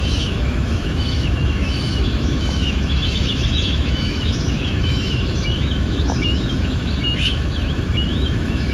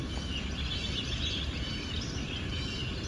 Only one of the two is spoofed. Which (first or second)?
first